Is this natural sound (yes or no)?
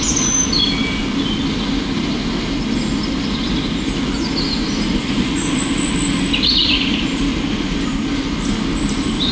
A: yes